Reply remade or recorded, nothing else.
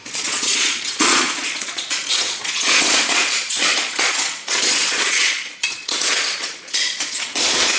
remade